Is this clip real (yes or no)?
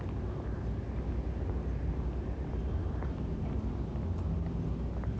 yes